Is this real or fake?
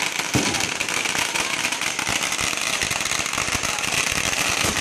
fake